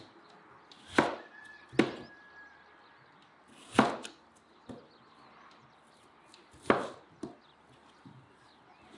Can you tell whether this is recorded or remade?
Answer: recorded